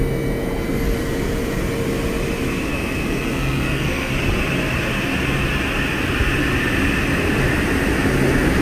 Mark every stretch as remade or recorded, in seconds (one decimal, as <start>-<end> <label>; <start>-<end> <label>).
0.0-2.7 recorded; 2.7-4.1 remade; 4.1-8.6 recorded